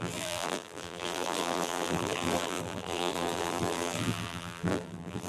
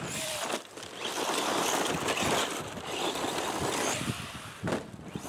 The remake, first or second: first